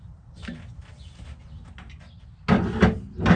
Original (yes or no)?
yes